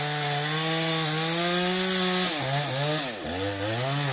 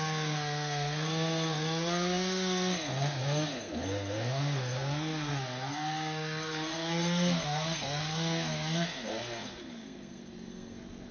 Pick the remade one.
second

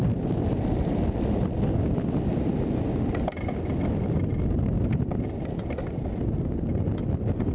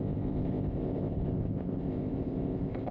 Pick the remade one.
second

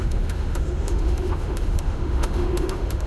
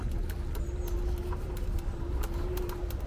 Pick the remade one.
first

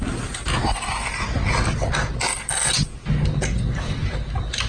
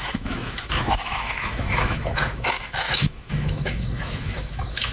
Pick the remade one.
second